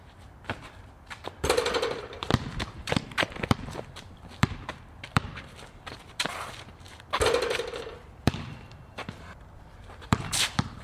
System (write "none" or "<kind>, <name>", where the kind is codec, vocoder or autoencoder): vocoder, BigVGAN v2